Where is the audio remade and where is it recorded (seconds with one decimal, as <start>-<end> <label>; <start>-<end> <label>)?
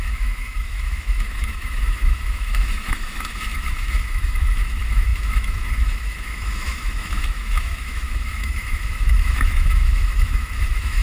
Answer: 0.0-11.0 remade